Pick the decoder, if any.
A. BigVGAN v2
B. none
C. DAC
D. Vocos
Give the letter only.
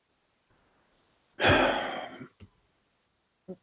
B